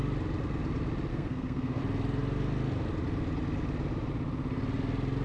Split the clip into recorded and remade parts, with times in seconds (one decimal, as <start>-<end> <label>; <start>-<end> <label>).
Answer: 0.0-1.1 recorded; 1.1-1.8 remade; 1.8-5.2 recorded